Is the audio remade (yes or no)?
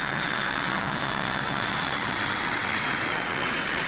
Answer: yes